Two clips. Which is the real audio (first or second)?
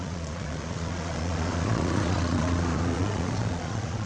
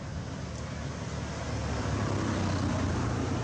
second